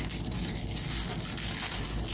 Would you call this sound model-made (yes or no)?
no